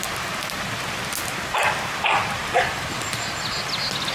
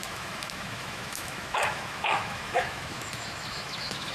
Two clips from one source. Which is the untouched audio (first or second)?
first